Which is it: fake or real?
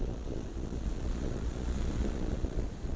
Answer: fake